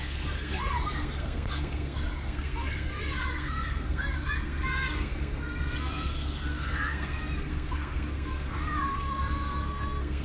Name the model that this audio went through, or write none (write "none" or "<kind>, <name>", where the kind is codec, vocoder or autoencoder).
codec, SNAC